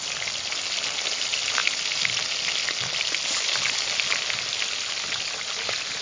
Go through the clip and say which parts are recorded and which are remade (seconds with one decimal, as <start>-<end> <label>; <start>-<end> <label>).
0.0-6.0 recorded